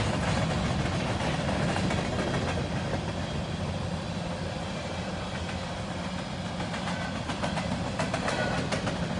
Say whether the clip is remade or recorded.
recorded